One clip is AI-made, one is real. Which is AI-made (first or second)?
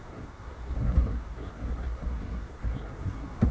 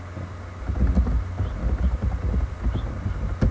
first